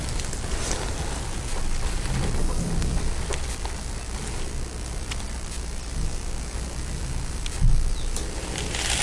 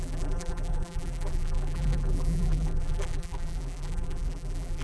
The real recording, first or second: first